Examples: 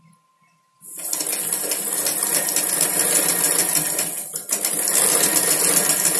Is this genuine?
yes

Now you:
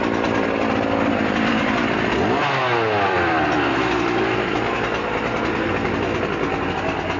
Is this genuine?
yes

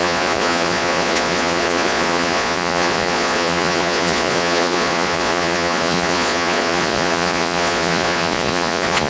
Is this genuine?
no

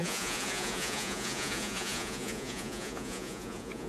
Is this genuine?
no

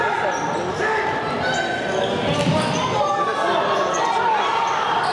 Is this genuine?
yes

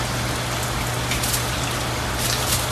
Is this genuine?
yes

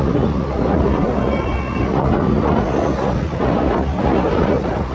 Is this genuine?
no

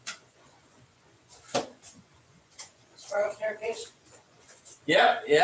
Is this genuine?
no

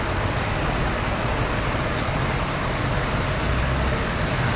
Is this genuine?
yes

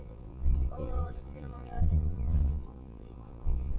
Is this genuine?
no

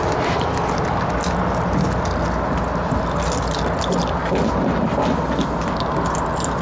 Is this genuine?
yes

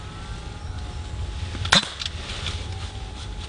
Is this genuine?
yes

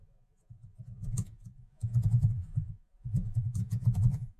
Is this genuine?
no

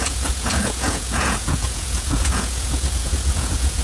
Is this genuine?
no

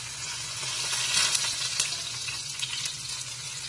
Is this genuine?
no